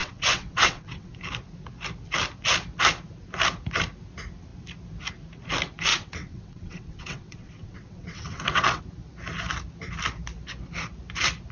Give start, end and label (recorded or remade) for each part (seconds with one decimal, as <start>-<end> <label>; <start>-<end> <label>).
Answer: 0.0-1.1 remade; 1.1-5.9 recorded; 5.9-8.8 remade; 8.8-11.5 recorded